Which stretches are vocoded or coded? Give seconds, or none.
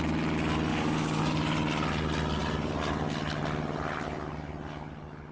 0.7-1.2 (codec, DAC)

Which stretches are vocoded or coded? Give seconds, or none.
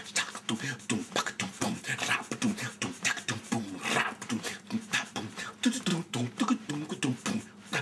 1.0-5.2 (vocoder, BigVGAN v2); 5.9-6.7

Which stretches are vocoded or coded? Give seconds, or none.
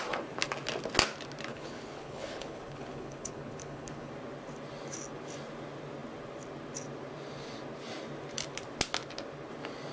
1.5-4.1 (codec, HILCodec)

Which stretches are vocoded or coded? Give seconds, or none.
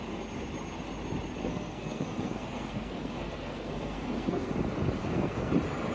1.4-4.5 (codec, SNAC); 5.0-5.5